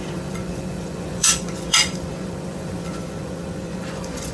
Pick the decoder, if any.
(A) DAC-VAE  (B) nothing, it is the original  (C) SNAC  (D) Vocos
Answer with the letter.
D